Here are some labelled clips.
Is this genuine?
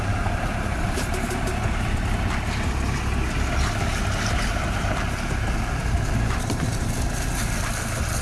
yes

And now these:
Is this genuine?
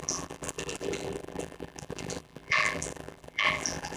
no